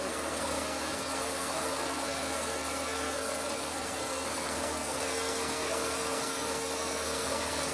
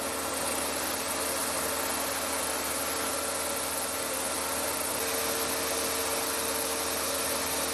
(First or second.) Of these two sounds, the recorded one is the second